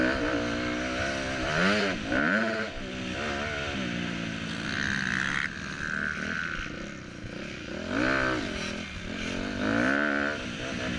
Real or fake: real